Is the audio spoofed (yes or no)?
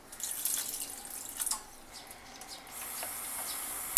no